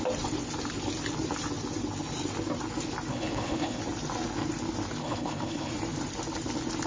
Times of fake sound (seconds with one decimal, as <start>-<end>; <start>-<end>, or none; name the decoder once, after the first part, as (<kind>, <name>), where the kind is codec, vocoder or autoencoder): 3.1-3.8 (codec, HILCodec); 5.0-5.7